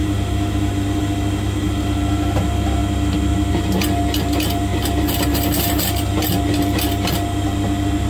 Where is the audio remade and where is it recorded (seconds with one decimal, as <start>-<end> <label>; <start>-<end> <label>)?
0.0-8.1 recorded